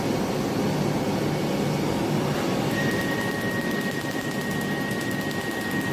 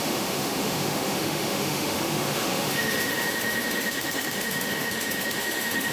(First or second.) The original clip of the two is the first